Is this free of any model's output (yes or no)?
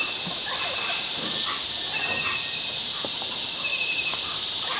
yes